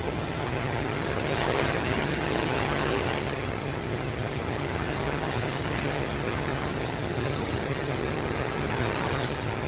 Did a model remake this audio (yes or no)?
yes